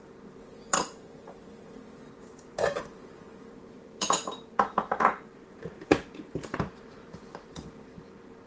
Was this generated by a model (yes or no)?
yes